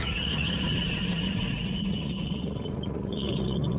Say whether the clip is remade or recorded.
remade